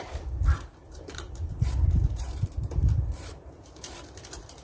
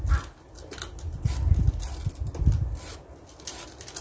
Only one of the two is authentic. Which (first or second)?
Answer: second